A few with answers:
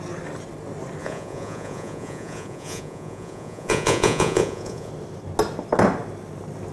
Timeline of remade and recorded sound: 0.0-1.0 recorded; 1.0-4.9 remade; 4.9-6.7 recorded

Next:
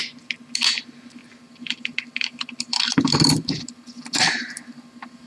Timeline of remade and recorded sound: 0.0-5.3 recorded

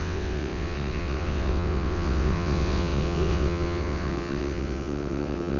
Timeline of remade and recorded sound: 0.0-5.6 remade

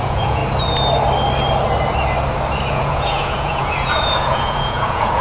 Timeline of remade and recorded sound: 0.0-0.4 remade; 0.4-2.7 recorded; 2.7-5.2 remade

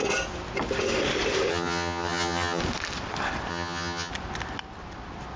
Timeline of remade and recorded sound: 0.0-1.5 recorded; 1.5-2.6 remade; 2.6-3.5 recorded; 3.5-4.1 remade; 4.1-5.4 recorded